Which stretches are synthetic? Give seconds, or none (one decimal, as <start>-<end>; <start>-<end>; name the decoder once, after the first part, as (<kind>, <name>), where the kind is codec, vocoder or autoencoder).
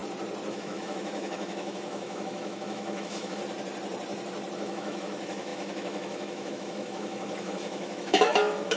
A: 0.5-3.4 (autoencoder, DAC-VAE); 4.6-8.8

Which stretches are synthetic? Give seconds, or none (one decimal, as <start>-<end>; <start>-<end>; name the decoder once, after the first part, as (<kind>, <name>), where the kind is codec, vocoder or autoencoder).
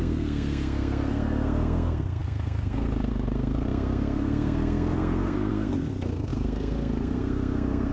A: 0.0-7.9 (codec, SNAC)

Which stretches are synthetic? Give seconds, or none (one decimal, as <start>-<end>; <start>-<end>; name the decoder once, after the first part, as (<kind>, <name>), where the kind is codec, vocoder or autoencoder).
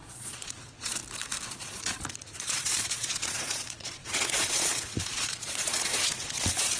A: 0.0-1.0 (vocoder, Vocos); 1.5-6.8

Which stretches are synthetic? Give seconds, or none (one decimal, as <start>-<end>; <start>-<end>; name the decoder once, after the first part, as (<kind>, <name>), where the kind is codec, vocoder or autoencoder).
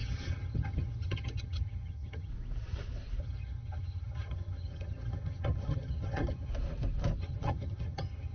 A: 0.0-2.3 (vocoder, HiFi-GAN); 3.2-6.5; 7.2-8.3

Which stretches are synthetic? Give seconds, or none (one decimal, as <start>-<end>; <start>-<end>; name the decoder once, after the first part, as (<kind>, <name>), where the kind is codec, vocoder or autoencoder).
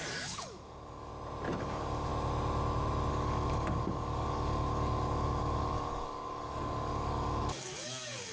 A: 0.0-1.1 (codec, DAC); 1.6-2.1; 3.1-8.3